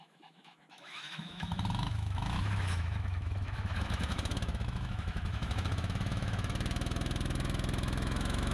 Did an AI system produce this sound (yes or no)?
yes